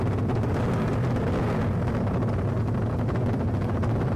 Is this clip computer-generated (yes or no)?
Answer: no